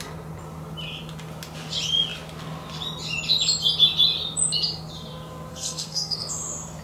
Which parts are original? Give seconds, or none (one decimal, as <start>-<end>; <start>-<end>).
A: 0.0-5.5; 6.3-6.8